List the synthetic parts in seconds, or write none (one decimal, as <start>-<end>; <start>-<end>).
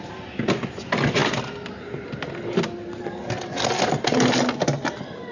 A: none